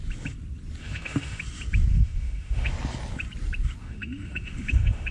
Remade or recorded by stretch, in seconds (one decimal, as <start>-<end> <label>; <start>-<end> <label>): 0.0-0.8 recorded; 0.8-1.4 remade; 1.4-1.9 recorded; 1.9-2.7 remade; 2.7-3.8 recorded; 3.8-5.1 remade

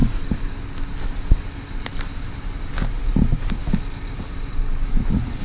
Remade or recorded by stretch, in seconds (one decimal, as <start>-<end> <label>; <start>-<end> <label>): 0.0-5.4 recorded

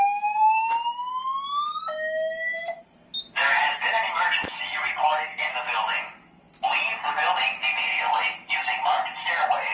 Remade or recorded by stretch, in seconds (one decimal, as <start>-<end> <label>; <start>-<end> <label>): 0.0-9.7 recorded